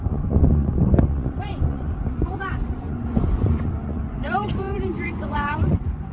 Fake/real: fake